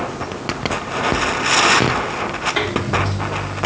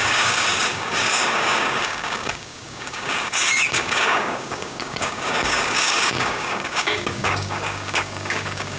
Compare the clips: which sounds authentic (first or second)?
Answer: first